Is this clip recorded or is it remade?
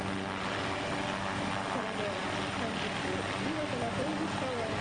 recorded